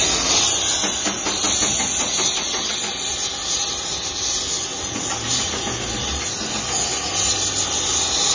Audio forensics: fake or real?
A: real